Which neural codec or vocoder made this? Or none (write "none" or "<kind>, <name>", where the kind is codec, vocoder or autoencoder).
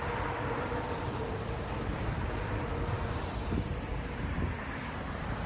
vocoder, BigVGAN v2